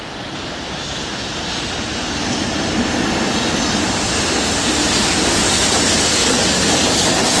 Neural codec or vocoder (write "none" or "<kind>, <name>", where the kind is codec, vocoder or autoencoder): none